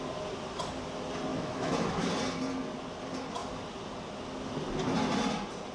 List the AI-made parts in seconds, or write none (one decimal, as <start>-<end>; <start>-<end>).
1.3-2.1